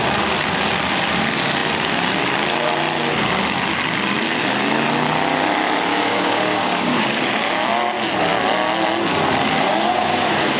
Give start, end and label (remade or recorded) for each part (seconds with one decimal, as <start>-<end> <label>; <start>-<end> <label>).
0.0-5.9 recorded; 5.9-7.7 remade; 7.7-10.6 recorded